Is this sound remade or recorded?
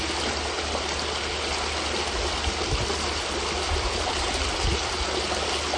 recorded